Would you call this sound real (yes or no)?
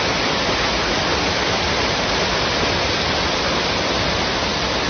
yes